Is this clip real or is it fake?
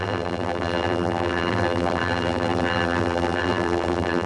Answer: fake